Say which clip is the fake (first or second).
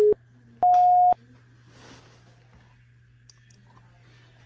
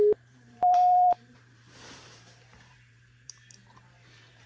second